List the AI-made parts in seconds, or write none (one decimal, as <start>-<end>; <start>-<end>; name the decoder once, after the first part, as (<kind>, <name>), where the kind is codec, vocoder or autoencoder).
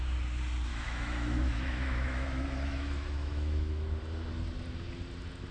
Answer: 0.7-4.0 (autoencoder, DAC-VAE)